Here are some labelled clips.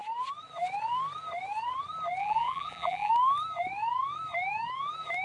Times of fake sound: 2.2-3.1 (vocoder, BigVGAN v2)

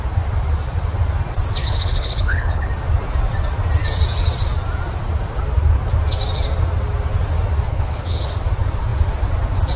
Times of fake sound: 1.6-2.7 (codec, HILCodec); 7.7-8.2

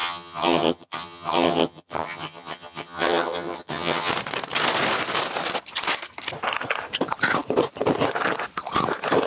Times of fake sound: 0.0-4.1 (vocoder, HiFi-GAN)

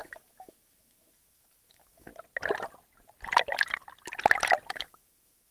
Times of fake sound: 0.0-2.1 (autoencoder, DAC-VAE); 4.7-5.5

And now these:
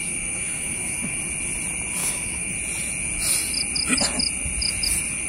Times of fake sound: 0.0-1.2 (autoencoder, DAC-VAE); 2.0-2.5

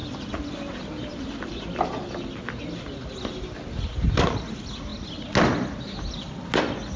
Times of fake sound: none